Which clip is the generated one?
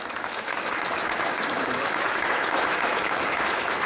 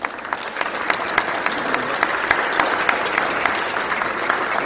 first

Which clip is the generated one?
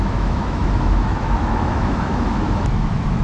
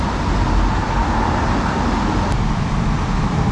first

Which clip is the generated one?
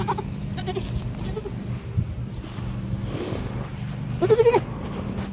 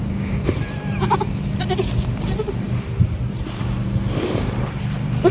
second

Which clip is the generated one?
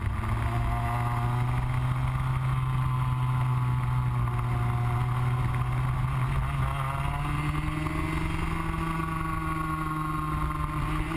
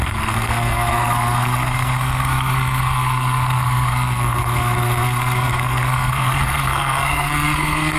second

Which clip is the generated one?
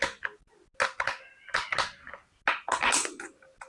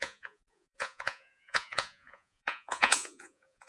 second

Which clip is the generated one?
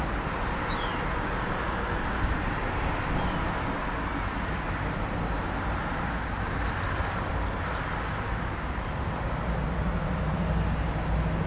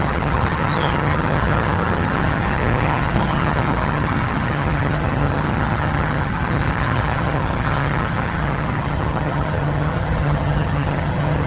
second